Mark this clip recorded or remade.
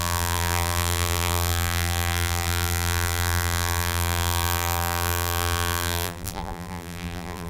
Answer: remade